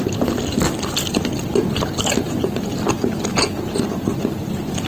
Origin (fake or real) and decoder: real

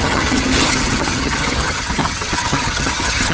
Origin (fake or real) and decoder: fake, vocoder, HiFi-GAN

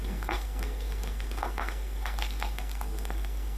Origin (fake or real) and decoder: fake, codec, SNAC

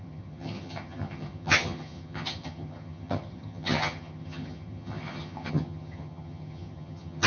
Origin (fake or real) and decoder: fake, vocoder, HiFi-GAN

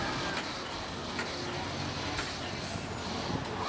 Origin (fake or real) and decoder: real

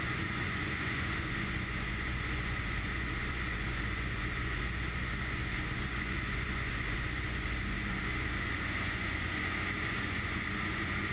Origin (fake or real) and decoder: fake, vocoder, Vocos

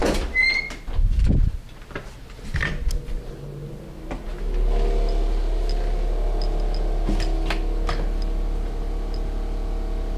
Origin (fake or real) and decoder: real